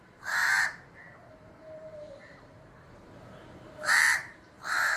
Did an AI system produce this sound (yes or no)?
yes